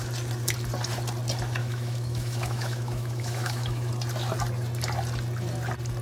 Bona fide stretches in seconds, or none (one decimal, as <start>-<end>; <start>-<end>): 0.0-1.6; 3.9-6.0